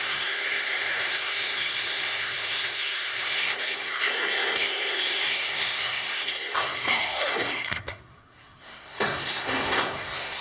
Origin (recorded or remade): remade